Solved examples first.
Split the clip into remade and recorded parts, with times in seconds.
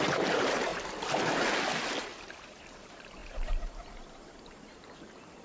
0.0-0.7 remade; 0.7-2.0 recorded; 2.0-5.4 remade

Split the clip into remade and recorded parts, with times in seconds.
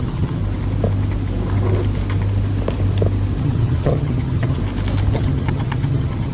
0.0-0.4 remade; 0.4-3.4 recorded; 3.4-4.6 remade; 4.6-5.1 recorded; 5.1-6.3 remade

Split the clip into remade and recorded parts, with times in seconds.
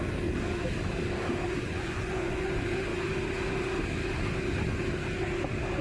0.0-1.6 recorded; 1.6-2.5 remade; 2.5-5.8 recorded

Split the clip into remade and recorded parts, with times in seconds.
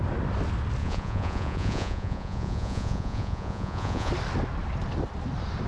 0.0-0.8 recorded; 0.8-4.1 remade; 4.1-5.7 recorded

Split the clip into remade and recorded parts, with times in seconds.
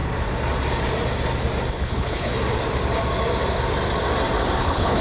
0.0-1.7 recorded; 1.7-2.3 remade; 2.3-4.6 recorded; 4.6-5.0 remade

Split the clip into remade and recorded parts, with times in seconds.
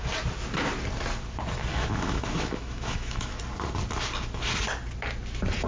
0.0-1.7 recorded; 1.7-3.4 remade; 3.4-5.7 recorded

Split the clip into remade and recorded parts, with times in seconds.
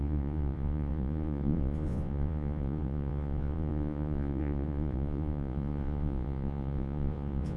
0.0-7.6 remade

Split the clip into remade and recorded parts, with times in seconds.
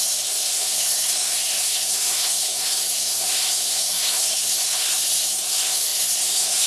0.0-6.7 remade